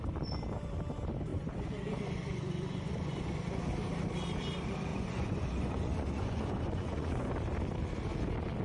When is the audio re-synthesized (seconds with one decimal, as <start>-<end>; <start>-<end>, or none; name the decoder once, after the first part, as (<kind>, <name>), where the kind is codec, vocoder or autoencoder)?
1.3-3.6 (vocoder, Vocos); 4.9-7.3